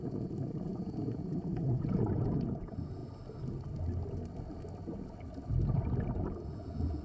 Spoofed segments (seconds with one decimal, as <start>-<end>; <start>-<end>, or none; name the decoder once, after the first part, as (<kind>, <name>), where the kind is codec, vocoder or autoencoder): 0.0-3.0 (vocoder, Vocos); 6.3-7.0